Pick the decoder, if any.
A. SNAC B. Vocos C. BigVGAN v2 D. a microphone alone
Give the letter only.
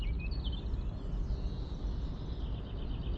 D